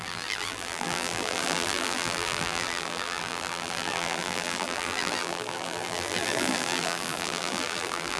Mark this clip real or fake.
fake